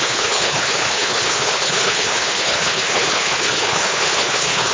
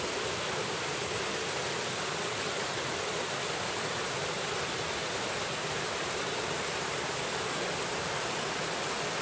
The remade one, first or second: first